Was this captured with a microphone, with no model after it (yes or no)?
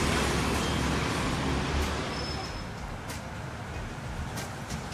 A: yes